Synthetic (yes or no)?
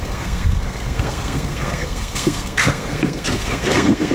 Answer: yes